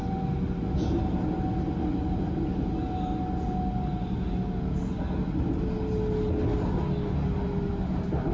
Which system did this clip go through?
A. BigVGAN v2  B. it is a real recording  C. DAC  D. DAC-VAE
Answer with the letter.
B